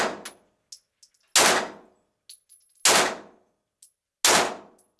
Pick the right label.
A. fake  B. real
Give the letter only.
B